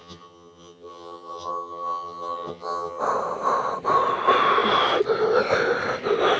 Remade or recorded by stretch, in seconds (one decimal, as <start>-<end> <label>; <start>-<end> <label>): 0.0-3.0 remade; 3.0-6.4 recorded